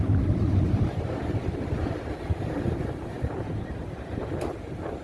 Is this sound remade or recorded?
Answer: remade